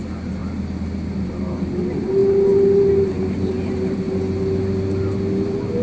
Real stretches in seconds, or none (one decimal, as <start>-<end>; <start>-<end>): 0.0-5.8